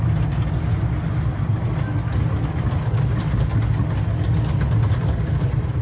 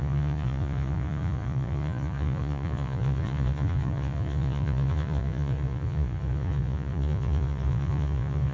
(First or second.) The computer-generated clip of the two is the second